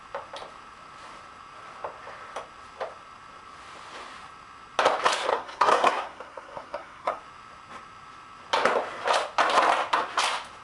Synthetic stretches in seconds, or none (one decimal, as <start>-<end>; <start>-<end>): 5.3-7.2